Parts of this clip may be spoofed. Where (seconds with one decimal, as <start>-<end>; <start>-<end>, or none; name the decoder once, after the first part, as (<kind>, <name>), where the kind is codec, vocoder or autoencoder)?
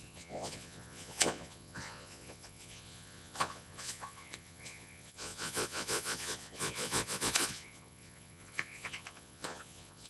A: 0.0-10.1 (vocoder, Vocos)